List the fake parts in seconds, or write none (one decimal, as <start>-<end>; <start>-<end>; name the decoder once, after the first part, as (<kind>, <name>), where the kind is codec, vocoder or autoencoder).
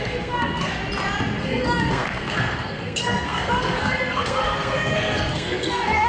0.0-0.8 (codec, SNAC); 1.4-6.1